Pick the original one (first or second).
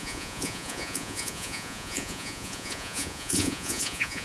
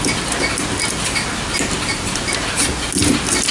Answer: second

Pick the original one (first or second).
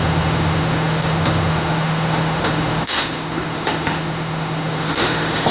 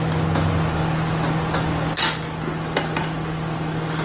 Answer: second